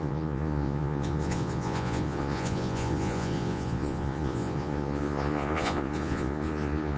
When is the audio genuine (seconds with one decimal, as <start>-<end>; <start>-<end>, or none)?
none